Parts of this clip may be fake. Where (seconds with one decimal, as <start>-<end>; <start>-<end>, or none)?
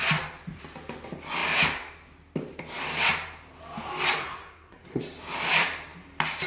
4.2-5.0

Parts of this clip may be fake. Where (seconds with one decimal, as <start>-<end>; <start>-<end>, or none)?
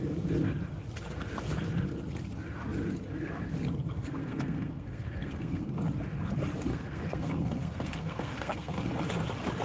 4.2-5.7; 6.7-8.9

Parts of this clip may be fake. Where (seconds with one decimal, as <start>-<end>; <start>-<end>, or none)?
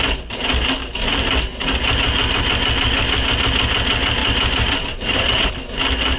4.2-5.5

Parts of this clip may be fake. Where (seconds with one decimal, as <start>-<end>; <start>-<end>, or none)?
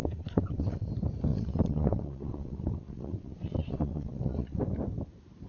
0.0-0.9; 1.3-4.6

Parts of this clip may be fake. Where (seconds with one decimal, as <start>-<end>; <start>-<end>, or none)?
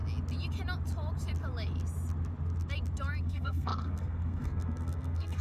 3.2-5.4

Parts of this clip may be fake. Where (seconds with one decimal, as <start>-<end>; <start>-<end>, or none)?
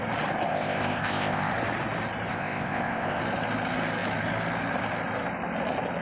0.5-1.5; 2.3-3.2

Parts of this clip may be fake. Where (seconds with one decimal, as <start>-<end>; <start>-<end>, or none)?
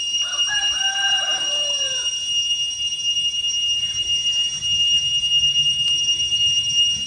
none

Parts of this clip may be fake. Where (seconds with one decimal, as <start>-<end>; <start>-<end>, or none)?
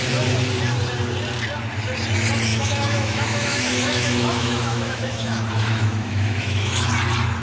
2.5-6.9